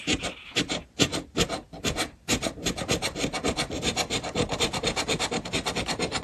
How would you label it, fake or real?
fake